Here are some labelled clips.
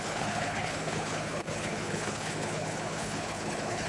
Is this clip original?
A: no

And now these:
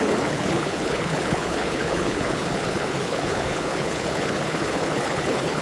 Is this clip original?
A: no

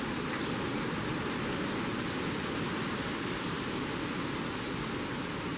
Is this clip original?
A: yes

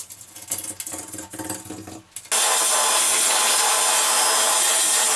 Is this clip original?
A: yes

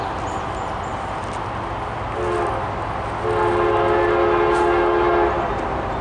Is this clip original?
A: yes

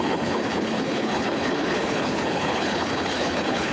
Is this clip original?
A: no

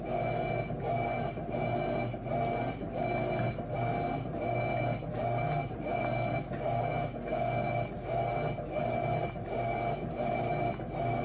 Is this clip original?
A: yes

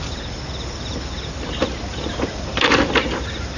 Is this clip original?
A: yes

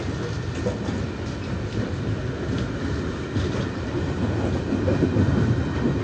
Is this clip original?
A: yes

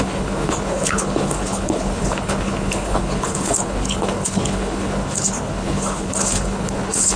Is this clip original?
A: no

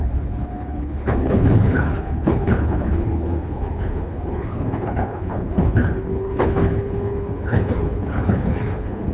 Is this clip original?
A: no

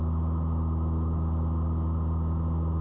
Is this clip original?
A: yes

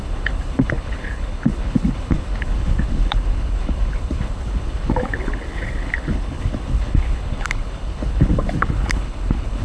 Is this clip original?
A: no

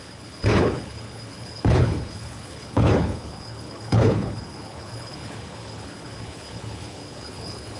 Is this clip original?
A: no